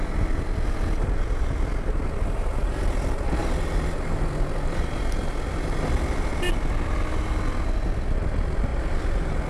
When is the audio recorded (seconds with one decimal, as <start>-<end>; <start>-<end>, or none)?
0.0-9.5